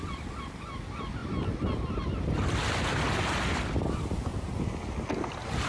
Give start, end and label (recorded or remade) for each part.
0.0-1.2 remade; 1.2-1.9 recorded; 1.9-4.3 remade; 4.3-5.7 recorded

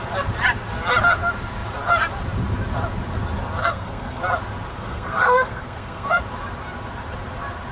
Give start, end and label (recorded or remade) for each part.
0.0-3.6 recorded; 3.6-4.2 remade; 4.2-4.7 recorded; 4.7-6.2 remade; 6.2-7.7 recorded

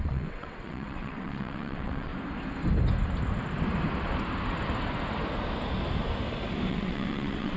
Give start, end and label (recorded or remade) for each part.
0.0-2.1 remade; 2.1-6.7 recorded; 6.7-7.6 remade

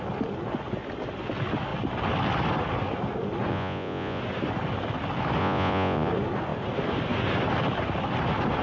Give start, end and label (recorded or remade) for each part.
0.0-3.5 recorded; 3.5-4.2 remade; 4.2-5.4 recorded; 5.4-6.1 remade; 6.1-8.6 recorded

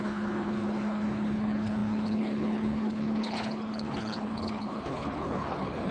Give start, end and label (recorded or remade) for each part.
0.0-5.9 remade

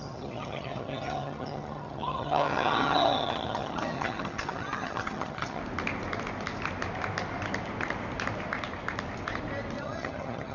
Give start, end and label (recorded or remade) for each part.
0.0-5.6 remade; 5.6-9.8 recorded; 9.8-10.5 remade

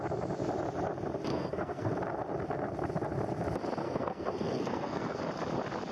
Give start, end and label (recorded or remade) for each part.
0.0-1.3 recorded; 1.3-1.9 remade; 1.9-3.8 recorded; 3.8-5.2 remade; 5.2-5.9 recorded

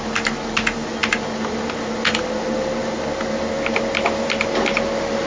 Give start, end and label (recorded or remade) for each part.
0.0-5.3 recorded